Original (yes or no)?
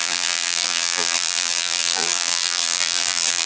no